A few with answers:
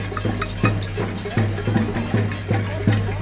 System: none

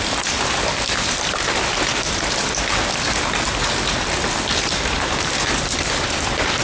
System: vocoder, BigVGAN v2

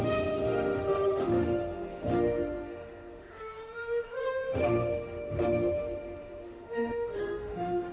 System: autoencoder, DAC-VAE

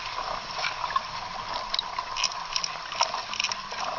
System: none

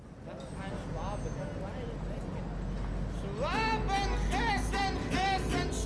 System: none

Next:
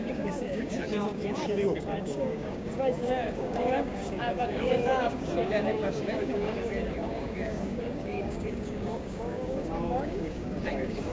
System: codec, DAC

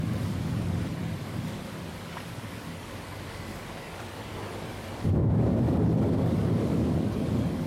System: codec, DAC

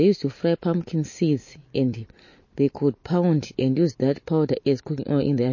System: none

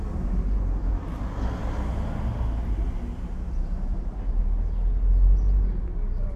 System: none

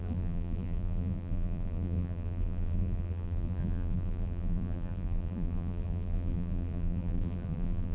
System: vocoder, BigVGAN v2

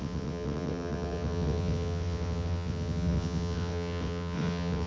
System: vocoder, WaveNeXt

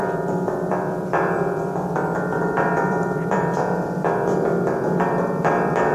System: vocoder, BigVGAN v2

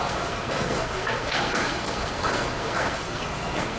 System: codec, SNAC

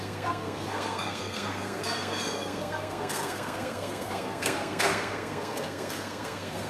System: codec, SNAC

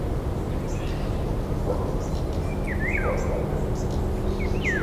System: none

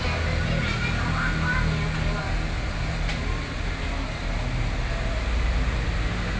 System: none